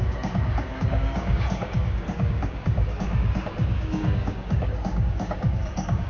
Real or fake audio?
fake